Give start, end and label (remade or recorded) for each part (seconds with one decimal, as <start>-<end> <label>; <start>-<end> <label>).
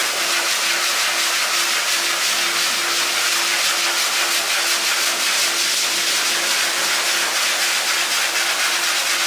0.0-9.3 recorded